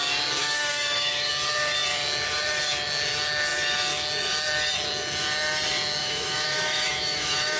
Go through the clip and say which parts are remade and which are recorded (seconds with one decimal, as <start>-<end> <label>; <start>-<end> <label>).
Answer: 0.0-0.4 recorded; 0.4-1.3 remade; 1.3-6.0 recorded; 6.0-7.6 remade